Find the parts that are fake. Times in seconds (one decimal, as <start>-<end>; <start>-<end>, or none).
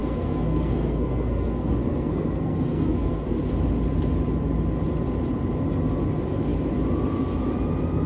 0.0-3.5